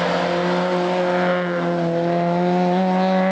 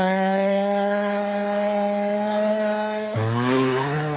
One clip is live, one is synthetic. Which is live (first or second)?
first